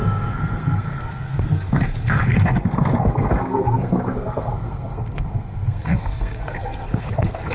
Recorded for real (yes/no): no